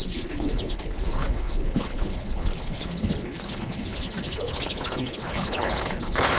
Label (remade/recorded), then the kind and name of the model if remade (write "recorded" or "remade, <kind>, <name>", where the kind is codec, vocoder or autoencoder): remade, codec, HILCodec